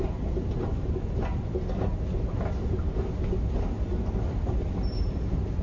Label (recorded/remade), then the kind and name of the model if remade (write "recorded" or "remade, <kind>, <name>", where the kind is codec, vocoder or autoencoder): recorded